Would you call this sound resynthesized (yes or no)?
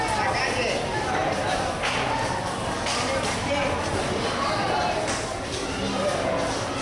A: no